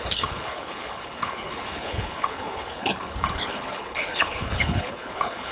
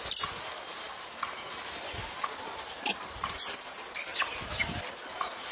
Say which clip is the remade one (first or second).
first